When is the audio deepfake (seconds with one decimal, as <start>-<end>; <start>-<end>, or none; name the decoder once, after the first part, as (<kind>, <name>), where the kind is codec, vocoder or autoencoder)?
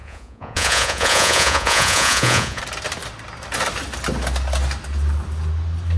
0.0-2.6 (vocoder, Vocos)